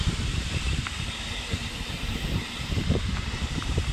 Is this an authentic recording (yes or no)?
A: no